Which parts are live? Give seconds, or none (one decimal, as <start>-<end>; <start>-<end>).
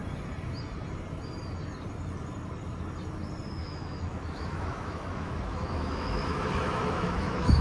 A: 0.0-3.6